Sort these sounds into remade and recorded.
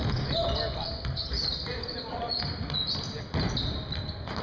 recorded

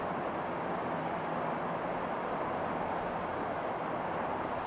recorded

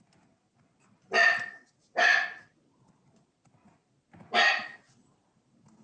recorded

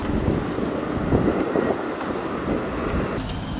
recorded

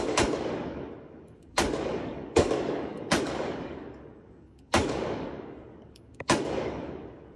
remade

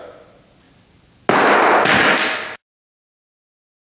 recorded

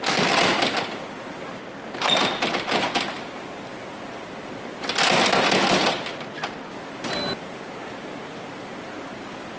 recorded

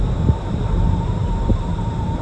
remade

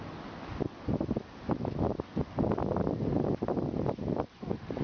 recorded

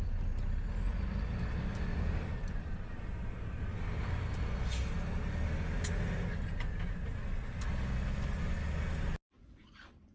recorded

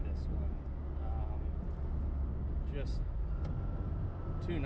recorded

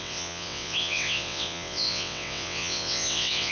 remade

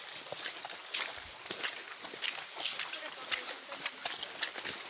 recorded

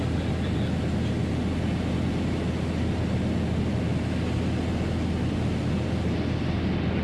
recorded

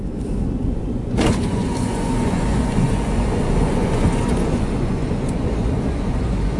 remade